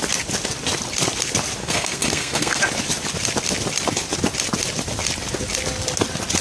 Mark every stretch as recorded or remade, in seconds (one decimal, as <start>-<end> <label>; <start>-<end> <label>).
0.0-1.6 recorded; 1.6-2.6 remade; 2.6-6.4 recorded